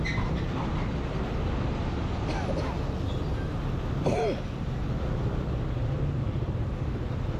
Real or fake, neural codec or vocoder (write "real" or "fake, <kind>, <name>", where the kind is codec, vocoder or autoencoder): real